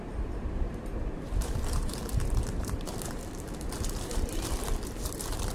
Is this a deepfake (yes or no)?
yes